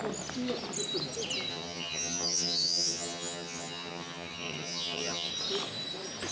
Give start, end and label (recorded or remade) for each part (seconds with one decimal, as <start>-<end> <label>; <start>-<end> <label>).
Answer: 0.0-1.5 recorded; 1.5-5.3 remade; 5.3-6.3 recorded